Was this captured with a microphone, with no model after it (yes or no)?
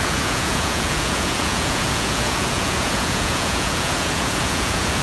no